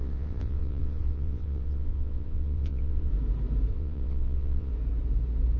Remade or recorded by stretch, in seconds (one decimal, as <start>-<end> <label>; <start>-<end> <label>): 0.0-3.1 remade; 3.1-3.7 recorded; 3.7-4.7 remade; 4.7-5.6 recorded

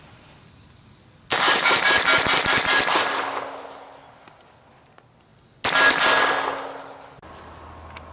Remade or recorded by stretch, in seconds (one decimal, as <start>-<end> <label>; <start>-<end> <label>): 0.0-1.3 recorded; 1.3-1.8 remade; 1.8-8.1 recorded

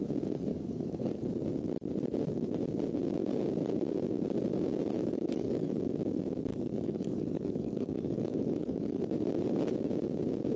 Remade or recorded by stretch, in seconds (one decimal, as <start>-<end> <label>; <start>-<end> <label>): 0.0-0.5 recorded; 0.5-1.1 remade; 1.1-5.0 recorded; 5.0-5.8 remade; 5.8-6.5 recorded; 6.5-9.0 remade; 9.0-10.6 recorded

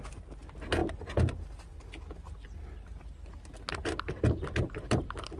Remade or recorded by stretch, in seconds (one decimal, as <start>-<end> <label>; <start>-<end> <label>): 0.0-5.4 recorded

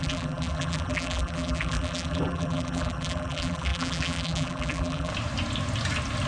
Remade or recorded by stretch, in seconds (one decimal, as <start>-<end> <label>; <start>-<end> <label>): 0.0-5.1 remade; 5.1-6.3 recorded

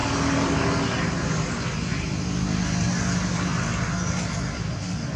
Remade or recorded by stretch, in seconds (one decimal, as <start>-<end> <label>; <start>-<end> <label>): 0.0-5.2 recorded